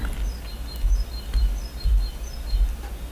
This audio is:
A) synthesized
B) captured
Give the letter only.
B